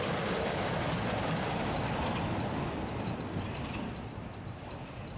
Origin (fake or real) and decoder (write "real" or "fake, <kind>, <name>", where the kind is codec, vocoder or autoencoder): real